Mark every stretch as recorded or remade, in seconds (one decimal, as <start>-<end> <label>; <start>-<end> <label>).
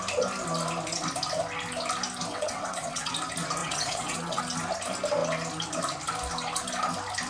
0.0-2.3 recorded; 2.3-3.1 remade; 3.1-3.6 recorded; 3.6-4.4 remade; 4.4-7.3 recorded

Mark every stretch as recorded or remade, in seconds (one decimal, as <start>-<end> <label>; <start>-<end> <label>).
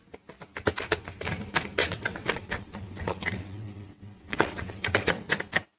0.0-1.8 recorded; 1.8-5.3 remade; 5.3-5.8 recorded